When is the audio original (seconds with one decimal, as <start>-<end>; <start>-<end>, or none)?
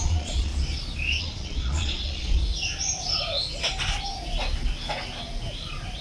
0.5-1.2; 2.4-6.0